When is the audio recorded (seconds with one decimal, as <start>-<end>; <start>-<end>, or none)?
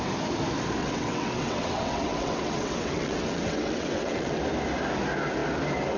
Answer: 0.0-0.8; 4.4-6.0